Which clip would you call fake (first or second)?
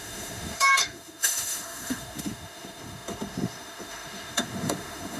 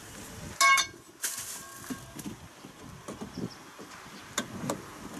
first